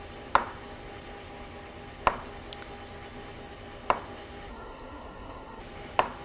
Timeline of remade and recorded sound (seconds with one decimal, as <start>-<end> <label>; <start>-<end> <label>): 0.0-4.5 recorded; 4.5-5.6 remade; 5.6-6.2 recorded